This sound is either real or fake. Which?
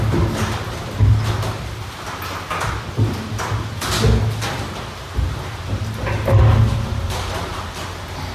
real